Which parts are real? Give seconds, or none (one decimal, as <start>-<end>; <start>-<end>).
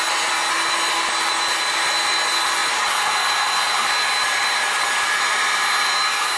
0.0-6.4